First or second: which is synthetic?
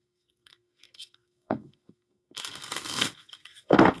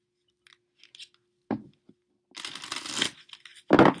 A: first